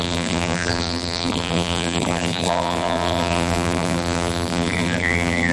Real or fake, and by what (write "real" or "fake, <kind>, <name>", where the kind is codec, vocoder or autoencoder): fake, vocoder, BigVGAN v2